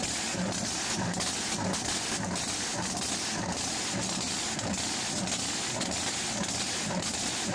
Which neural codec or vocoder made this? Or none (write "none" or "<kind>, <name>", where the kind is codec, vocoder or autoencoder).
none